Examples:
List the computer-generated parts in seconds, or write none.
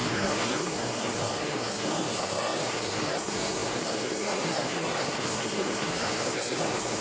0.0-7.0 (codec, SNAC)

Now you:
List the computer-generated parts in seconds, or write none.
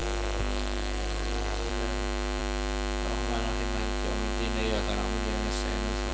0.0-1.7 (codec, SNAC)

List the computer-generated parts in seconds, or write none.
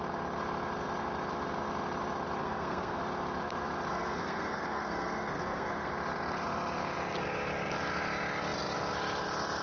2.4-3.0 (codec, SNAC); 3.9-5.9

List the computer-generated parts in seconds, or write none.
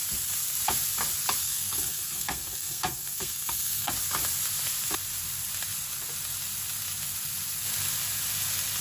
1.4-3.9 (codec, SNAC)